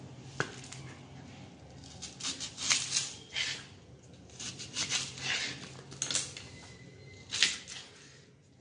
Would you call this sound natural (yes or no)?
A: yes